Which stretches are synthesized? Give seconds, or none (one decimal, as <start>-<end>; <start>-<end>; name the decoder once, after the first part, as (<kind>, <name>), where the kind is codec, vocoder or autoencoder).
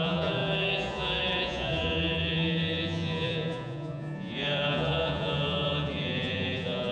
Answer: 0.0-6.9 (vocoder, Vocos)